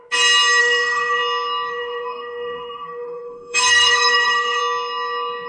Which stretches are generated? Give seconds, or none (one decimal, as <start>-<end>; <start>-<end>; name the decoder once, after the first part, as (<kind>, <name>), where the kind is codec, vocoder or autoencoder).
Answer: 0.6-1.2 (codec, SNAC); 1.7-4.6